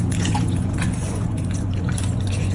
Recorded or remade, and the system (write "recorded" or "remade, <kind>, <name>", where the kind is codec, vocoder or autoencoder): remade, vocoder, Vocos